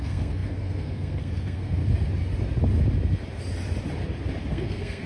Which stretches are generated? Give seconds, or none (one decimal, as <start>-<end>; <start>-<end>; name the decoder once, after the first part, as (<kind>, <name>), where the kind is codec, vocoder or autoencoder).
0.0-1.8 (codec, SNAC); 4.5-5.1